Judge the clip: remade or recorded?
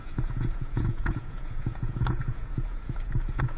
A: remade